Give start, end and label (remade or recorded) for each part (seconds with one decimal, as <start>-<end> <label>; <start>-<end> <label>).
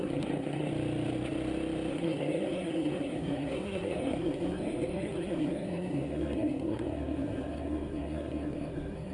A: 0.0-0.7 remade; 0.7-1.9 recorded; 1.9-9.1 remade